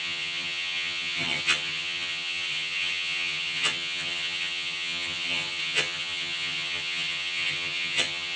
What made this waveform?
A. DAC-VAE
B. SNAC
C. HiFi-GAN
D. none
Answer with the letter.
C